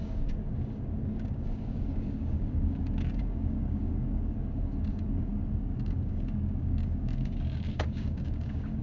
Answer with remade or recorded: remade